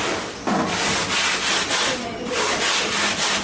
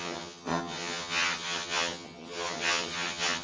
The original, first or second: first